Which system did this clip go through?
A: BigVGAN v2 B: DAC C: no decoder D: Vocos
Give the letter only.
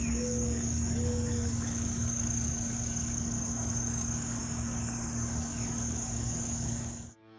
B